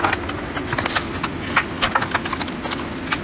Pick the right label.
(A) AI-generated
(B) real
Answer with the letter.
B